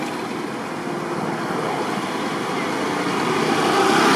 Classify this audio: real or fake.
real